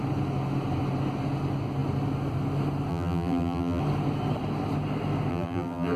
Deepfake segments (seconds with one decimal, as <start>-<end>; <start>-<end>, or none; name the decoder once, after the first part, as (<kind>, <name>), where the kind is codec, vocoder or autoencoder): 2.9-3.8 (vocoder, BigVGAN v2); 5.3-6.0